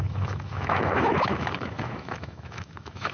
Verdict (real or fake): fake